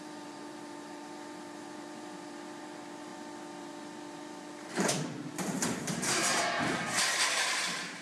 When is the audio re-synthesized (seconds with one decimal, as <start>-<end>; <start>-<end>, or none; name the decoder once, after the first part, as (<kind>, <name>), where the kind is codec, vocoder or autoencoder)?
0.0-8.0 (vocoder, BigVGAN v2)